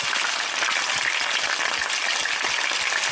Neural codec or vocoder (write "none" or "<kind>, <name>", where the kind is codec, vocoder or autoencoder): none